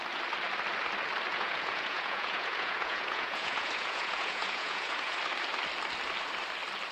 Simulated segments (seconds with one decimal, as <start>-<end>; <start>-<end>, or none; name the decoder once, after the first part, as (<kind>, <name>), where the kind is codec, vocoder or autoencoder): 1.3-5.2 (vocoder, Vocos)